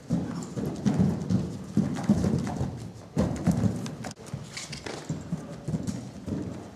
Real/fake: real